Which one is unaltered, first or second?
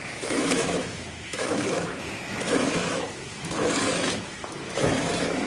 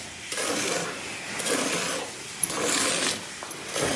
second